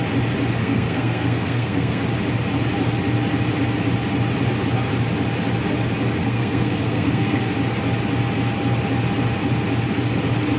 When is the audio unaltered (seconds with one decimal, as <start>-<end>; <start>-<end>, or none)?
0.0-0.6; 2.0-6.2; 7.5-10.6